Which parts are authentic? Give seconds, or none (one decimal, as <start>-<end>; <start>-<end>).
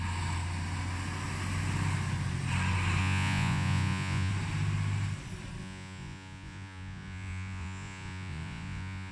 0.0-3.0; 4.3-5.6